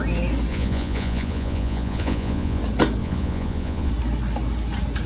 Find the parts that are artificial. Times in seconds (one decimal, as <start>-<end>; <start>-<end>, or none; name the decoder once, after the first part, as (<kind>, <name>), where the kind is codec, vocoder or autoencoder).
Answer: 0.5-2.6 (vocoder, Vocos); 3.0-3.9